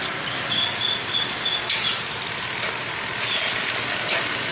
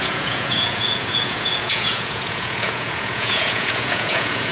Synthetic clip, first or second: second